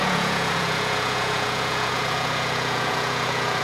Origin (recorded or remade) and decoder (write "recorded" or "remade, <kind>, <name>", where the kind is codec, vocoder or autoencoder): remade, vocoder, Vocos